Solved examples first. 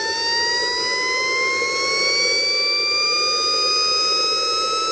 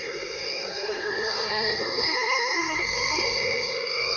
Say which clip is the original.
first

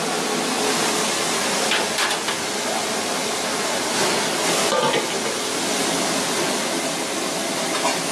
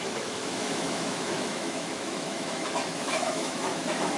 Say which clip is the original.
first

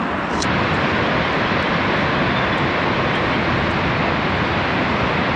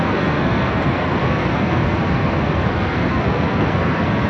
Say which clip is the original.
first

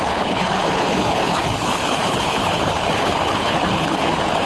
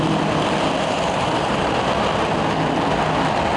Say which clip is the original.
second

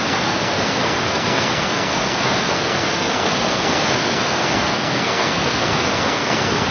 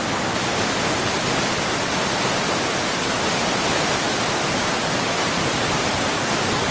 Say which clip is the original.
second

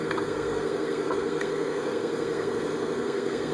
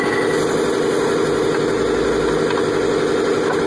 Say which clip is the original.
second